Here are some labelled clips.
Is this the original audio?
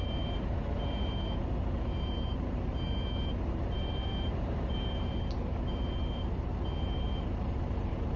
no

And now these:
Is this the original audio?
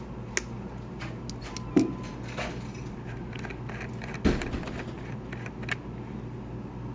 yes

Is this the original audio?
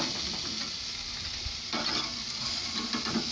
yes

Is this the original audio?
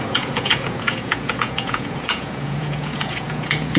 no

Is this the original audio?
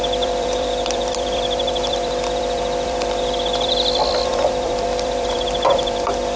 no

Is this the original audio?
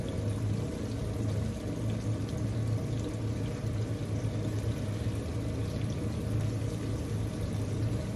yes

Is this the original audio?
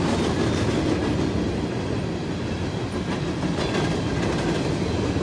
yes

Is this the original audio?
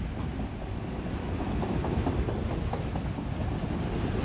yes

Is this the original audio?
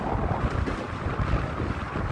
yes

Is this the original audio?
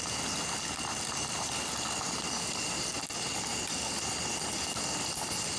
yes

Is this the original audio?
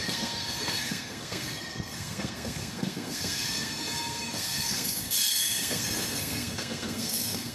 no